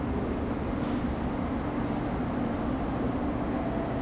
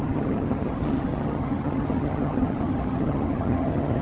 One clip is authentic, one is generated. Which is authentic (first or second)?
first